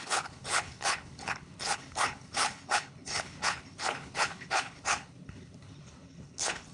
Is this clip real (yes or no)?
no